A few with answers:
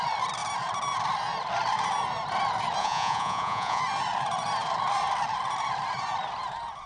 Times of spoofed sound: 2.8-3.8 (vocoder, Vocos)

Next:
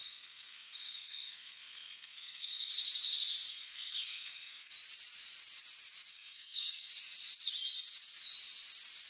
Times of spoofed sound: 0.0-2.7 (codec, SNAC); 3.5-4.7; 6.1-6.9

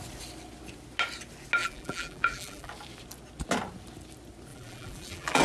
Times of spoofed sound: 1.6-2.7 (vocoder, BigVGAN v2); 4.5-5.4

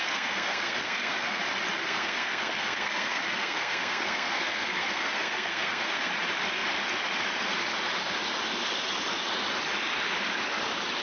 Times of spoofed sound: 0.0-1.4 (codec, SNAC); 1.8-6.1

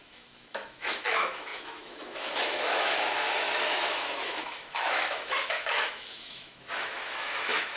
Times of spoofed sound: 0.0-7.8 (autoencoder, DAC-VAE)

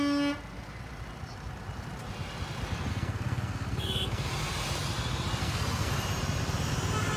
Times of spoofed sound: 2.9-4.3 (codec, SNAC); 5.4-5.9

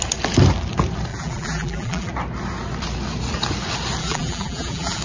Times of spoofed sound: 1.1-2.1 (vocoder, BigVGAN v2); 4.0-5.0

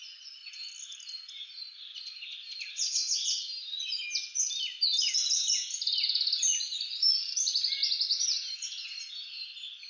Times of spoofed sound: none